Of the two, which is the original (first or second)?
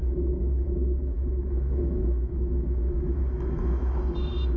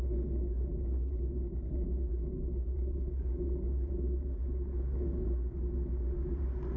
second